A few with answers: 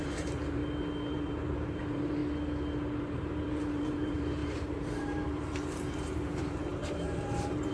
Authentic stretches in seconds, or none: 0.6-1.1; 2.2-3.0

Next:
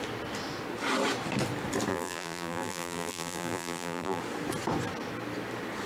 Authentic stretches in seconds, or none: 0.0-1.9; 4.2-5.9

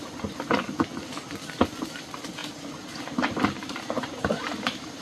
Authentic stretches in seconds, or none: 0.0-5.0

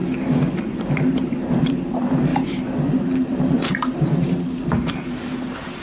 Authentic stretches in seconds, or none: 0.0-0.9